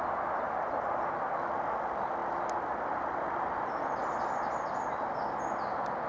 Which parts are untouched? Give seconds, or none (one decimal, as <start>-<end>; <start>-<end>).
0.0-6.1